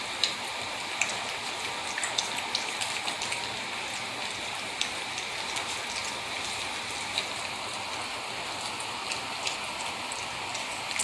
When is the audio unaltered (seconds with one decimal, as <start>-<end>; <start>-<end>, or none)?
0.0-11.0